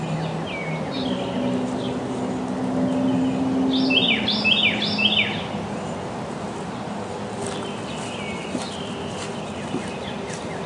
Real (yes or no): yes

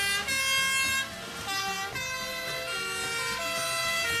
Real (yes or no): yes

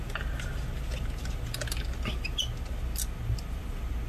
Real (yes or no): yes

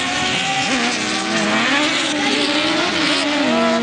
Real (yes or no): yes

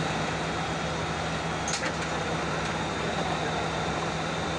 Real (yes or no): yes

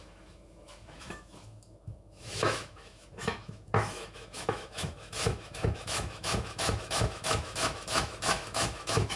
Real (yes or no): no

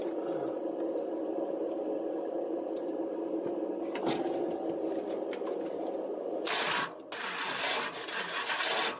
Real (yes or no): yes